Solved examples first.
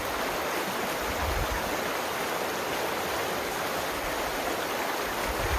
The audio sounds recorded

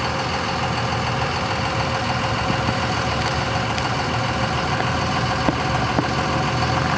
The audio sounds recorded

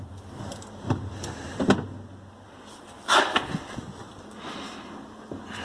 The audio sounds recorded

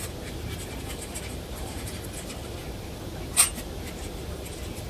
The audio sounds remade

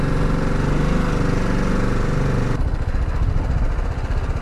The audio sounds recorded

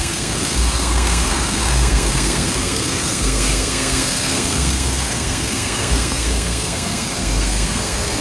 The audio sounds remade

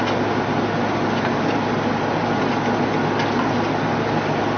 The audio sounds recorded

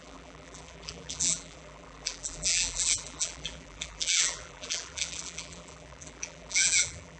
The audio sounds remade